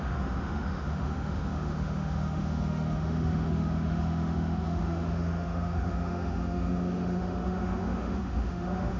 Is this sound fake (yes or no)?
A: yes